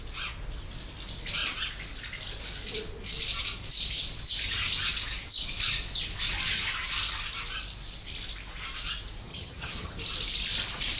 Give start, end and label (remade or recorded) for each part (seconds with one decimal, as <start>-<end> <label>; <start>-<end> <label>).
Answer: 0.0-9.3 recorded; 9.3-10.0 remade; 10.0-11.0 recorded